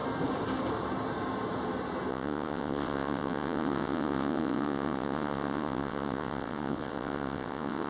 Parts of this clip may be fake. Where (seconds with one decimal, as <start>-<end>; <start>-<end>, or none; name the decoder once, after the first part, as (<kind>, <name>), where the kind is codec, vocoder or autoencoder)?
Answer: 2.1-7.9 (vocoder, WaveNeXt)